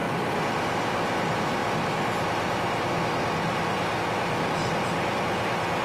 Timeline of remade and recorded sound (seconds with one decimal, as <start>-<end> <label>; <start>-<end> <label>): 0.0-5.8 recorded